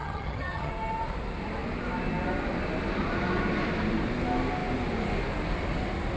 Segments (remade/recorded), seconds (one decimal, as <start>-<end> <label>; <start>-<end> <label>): 0.0-0.7 remade; 0.7-6.2 recorded